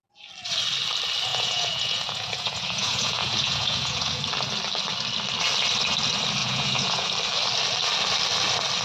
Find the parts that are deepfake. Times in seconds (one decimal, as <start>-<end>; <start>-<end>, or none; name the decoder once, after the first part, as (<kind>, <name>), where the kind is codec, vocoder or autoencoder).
1.3-4.2 (vocoder, Vocos); 6.4-7.1